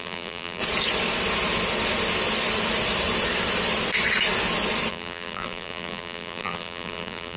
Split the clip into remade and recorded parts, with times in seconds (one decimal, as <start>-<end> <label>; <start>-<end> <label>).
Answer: 0.0-0.6 remade; 0.6-4.9 recorded; 4.9-7.4 remade